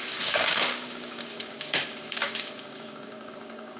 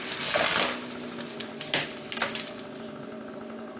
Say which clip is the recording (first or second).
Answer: second